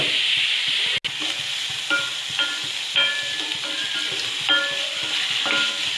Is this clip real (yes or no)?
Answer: yes